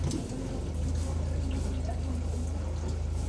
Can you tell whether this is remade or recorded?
recorded